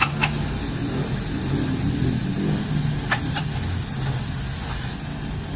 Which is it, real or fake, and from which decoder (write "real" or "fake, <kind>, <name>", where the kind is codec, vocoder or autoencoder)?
real